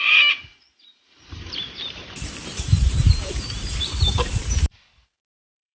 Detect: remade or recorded remade